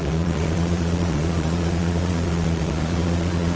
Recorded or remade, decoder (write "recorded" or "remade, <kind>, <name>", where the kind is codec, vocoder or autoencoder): remade, vocoder, Vocos